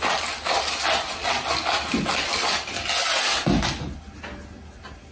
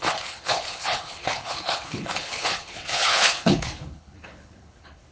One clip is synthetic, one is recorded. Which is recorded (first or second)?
first